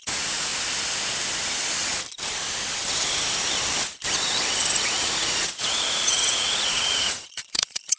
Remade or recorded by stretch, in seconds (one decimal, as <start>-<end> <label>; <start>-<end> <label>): 0.0-0.5 remade; 0.5-4.8 recorded; 4.8-8.0 remade